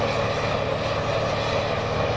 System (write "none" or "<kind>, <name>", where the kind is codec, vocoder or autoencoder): none